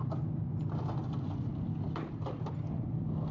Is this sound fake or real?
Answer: real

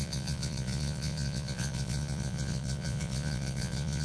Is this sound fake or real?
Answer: fake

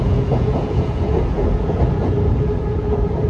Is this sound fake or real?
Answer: fake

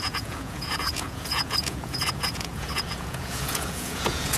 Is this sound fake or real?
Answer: fake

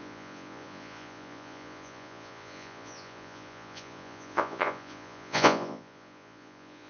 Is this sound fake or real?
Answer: fake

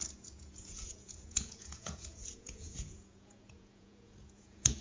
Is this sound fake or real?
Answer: fake